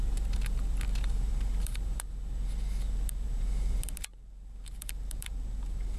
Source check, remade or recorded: remade